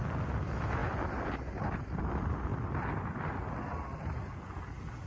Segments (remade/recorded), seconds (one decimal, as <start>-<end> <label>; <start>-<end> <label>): 0.0-5.1 recorded

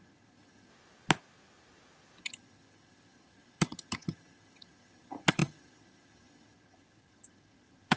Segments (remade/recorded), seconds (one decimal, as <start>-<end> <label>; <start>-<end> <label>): 0.0-0.7 remade; 0.7-2.2 recorded; 2.2-8.0 remade

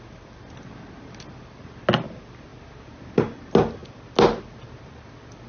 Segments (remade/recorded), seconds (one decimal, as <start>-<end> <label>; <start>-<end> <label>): 0.0-5.5 recorded

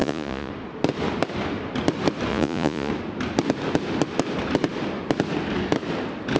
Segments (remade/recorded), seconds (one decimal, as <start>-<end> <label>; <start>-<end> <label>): 0.0-0.5 remade; 0.5-2.3 recorded; 2.3-2.9 remade; 2.9-6.4 recorded

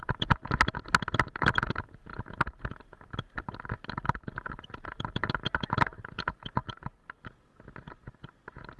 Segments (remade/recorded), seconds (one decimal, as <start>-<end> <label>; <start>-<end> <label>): 0.0-8.8 recorded

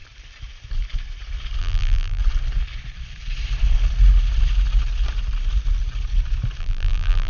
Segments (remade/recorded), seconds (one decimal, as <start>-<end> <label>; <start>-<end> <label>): 0.0-1.6 recorded; 1.6-2.2 remade; 2.2-6.6 recorded; 6.6-7.3 remade

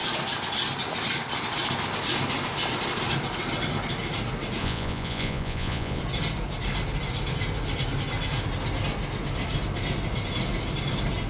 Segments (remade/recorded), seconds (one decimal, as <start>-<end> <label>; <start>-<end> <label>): 0.0-4.6 recorded; 4.6-6.0 remade; 6.0-11.3 recorded